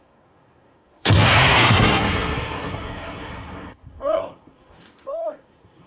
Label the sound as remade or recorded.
remade